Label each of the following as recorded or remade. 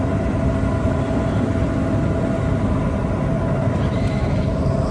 recorded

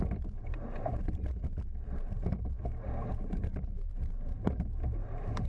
remade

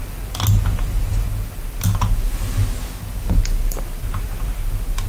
recorded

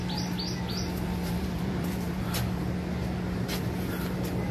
recorded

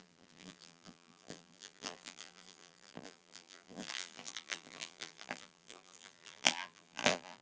remade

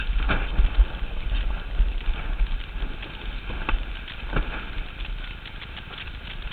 recorded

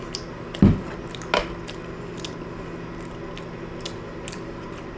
recorded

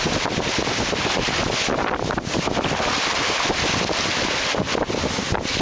recorded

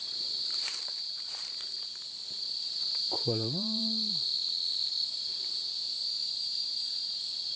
remade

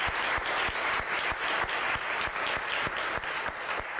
recorded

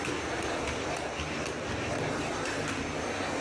recorded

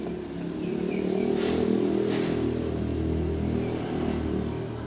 recorded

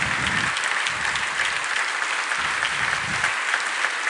recorded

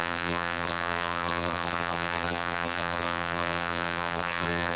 remade